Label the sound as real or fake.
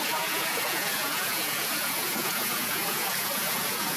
fake